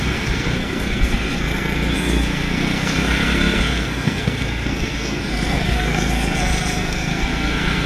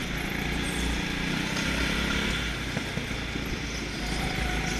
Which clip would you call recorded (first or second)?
second